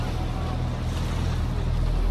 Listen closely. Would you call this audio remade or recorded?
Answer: recorded